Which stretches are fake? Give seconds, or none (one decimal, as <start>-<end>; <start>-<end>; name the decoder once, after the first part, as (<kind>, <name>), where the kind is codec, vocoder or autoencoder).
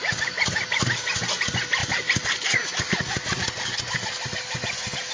none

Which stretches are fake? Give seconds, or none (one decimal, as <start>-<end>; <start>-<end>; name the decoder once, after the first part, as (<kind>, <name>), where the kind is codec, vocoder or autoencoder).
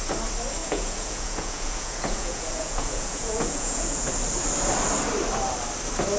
0.6-4.1 (vocoder, Vocos)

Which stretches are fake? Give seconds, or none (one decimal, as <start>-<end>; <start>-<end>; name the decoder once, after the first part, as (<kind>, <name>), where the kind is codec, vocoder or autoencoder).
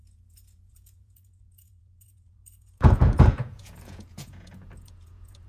0.0-5.5 (vocoder, Vocos)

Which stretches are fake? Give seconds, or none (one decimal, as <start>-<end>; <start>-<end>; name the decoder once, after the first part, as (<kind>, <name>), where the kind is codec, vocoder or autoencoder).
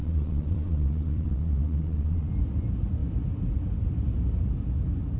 0.0-2.3 (vocoder, Vocos)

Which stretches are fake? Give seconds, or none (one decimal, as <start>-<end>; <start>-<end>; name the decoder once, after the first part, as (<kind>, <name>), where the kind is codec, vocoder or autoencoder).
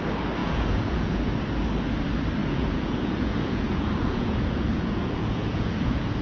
0.4-1.2 (vocoder, Vocos); 2.4-6.2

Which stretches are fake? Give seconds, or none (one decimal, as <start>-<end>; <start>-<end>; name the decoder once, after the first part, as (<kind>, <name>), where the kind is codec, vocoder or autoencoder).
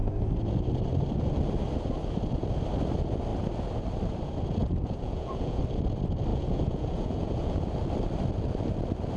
4.6-5.6 (vocoder, Vocos); 6.3-7.6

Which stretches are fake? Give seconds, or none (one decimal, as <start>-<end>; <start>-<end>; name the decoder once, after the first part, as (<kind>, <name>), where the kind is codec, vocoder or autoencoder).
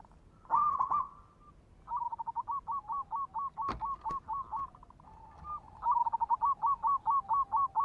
none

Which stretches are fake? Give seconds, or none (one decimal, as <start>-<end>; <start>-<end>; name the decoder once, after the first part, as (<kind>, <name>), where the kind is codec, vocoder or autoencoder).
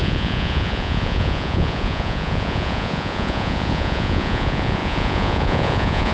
0.0-6.1 (vocoder, Vocos)